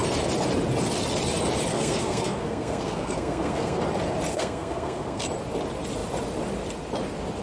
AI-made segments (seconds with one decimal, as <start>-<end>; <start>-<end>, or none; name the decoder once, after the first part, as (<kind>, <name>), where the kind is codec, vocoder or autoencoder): 1.7-3.8 (codec, SNAC); 4.3-5.2